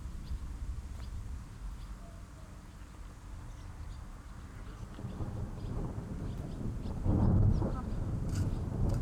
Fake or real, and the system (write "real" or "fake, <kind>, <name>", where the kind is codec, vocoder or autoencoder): real